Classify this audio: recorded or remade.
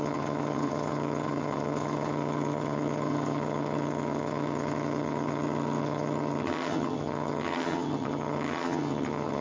remade